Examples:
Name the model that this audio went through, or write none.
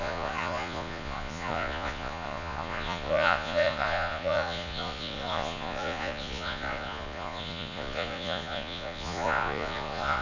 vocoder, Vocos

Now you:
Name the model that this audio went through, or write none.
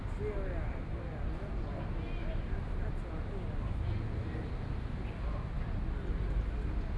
none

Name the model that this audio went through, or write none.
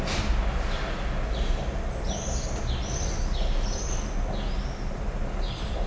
none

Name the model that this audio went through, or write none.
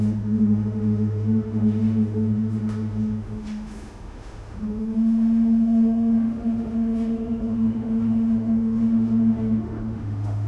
autoencoder, DAC-VAE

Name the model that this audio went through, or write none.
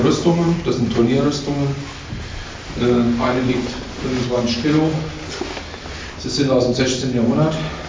none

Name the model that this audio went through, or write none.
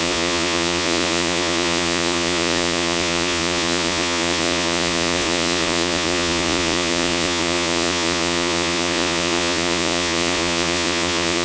vocoder, Vocos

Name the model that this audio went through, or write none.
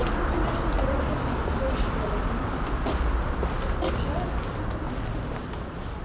none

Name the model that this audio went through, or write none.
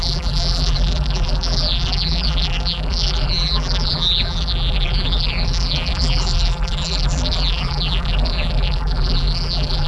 vocoder, BigVGAN v2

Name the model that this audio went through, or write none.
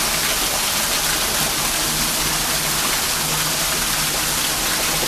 none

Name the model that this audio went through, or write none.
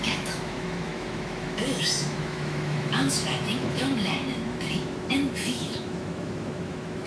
autoencoder, DAC-VAE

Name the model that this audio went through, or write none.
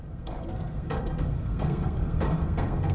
codec, SNAC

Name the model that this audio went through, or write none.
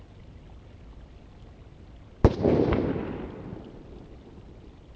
none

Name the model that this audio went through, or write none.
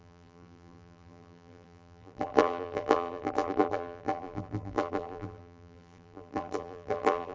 vocoder, BigVGAN v2